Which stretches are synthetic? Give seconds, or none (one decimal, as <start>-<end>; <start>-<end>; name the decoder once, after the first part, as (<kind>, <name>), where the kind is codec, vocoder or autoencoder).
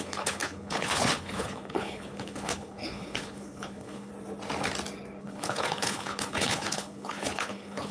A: 0.0-4.1 (codec, HILCodec); 5.2-7.9